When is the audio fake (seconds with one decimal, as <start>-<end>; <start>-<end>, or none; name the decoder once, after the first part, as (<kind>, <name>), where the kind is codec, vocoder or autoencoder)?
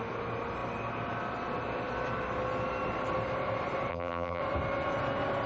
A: 3.9-4.4 (vocoder, BigVGAN v2)